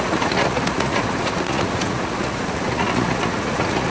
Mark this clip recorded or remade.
remade